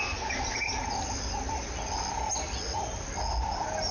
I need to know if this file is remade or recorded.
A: recorded